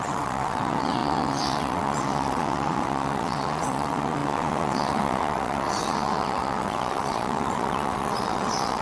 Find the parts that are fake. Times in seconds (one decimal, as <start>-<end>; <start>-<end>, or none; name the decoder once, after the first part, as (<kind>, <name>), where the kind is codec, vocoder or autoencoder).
0.0-8.8 (vocoder, WaveNeXt)